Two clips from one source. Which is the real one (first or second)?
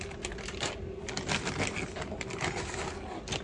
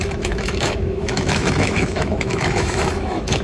first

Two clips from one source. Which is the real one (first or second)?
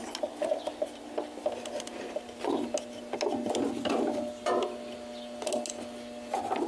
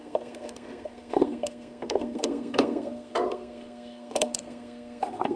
first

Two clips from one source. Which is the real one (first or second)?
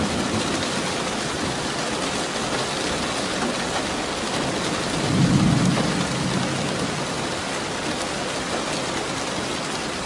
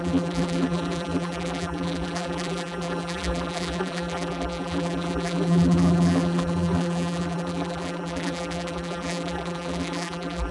first